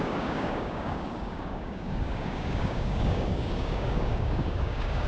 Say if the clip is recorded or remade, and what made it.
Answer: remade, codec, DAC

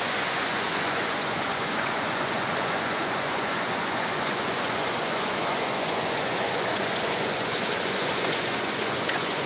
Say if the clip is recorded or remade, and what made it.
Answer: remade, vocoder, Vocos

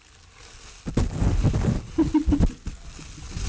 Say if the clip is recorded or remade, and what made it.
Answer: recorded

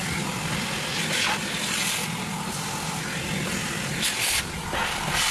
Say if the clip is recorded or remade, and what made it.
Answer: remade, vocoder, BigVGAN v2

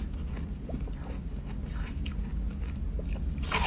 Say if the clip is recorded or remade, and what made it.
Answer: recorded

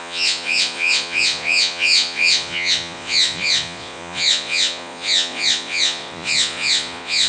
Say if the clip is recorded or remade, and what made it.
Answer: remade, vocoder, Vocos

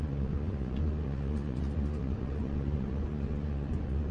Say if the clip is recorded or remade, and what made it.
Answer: remade, vocoder, Vocos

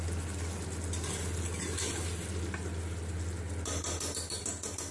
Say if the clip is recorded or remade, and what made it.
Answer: recorded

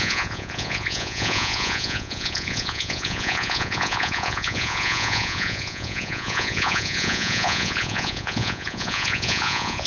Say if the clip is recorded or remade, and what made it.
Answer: remade, vocoder, Vocos